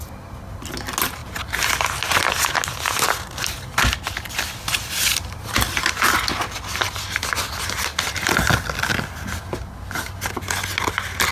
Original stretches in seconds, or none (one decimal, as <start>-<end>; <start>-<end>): 0.0-11.3

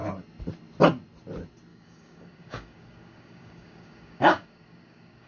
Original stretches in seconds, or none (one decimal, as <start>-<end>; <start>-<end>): 0.0-1.7

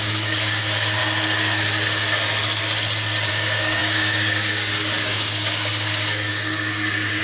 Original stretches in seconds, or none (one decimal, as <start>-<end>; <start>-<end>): 1.0-3.3

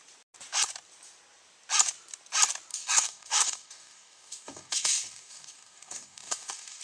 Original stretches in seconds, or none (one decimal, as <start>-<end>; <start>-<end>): 0.0-2.7

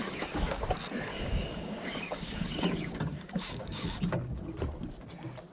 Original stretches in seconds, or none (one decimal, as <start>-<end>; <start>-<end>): 0.6-1.1; 4.4-5.5

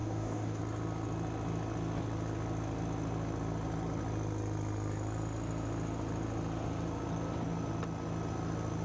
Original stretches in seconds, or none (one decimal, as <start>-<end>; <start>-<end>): 0.6-8.8

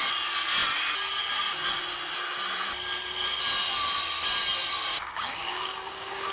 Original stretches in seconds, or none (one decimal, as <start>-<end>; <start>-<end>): 0.0-4.9

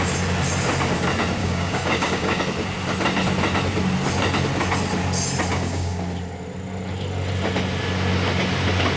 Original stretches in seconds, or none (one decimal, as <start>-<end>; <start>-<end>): 0.0-1.4; 2.4-5.5; 6.0-9.0